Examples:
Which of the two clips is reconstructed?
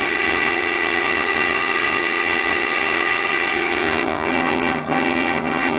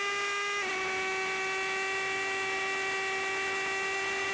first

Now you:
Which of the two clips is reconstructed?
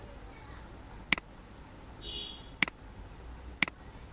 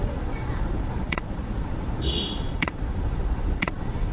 second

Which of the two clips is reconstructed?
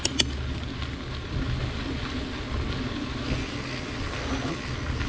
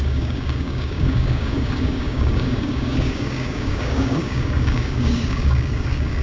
second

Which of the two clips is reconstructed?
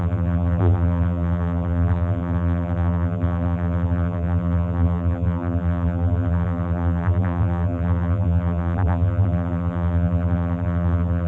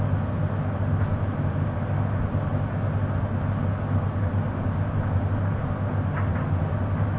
first